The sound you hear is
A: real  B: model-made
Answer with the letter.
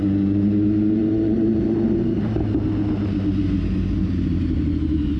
A